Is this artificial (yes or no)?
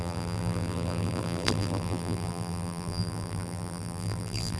yes